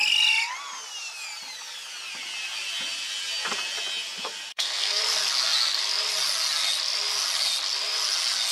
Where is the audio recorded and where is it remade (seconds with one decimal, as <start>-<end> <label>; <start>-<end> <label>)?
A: 0.0-4.5 recorded; 4.5-5.0 remade; 5.0-8.5 recorded